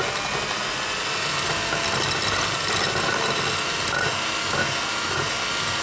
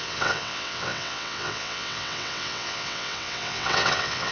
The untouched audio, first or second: first